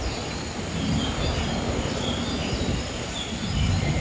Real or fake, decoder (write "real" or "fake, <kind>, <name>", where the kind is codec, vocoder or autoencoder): real